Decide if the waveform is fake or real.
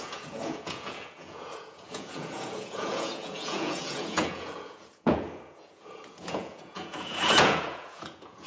fake